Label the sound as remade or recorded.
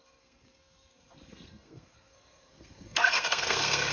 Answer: remade